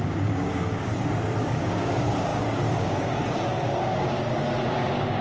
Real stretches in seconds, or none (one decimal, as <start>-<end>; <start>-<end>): 0.9-1.4